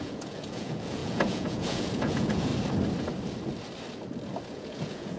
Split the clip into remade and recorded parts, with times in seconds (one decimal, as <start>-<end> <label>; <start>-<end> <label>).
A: 0.0-2.5 remade; 2.5-4.5 recorded; 4.5-5.2 remade